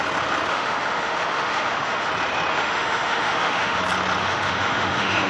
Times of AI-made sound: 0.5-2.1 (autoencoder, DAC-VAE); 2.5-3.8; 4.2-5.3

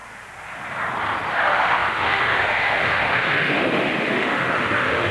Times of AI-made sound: 1.3-5.1 (autoencoder, DAC-VAE)

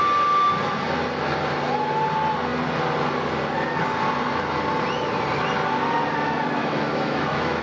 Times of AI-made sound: 6.6-7.6 (autoencoder, DAC-VAE)